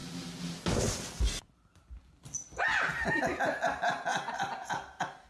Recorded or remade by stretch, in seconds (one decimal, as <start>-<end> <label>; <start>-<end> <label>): 0.0-5.3 recorded